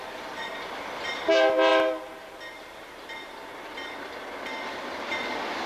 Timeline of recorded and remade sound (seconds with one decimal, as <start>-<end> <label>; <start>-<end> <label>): 0.0-5.7 recorded